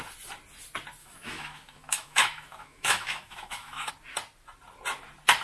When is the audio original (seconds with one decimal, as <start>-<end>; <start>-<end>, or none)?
0.0-1.0; 3.9-5.4